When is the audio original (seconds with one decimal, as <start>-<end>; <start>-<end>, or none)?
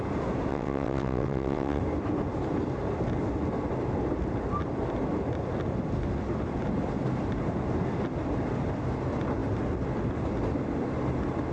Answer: 0.0-0.5; 1.8-11.5